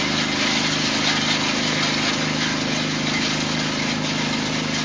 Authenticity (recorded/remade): recorded